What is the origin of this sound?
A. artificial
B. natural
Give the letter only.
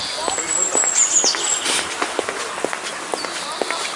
B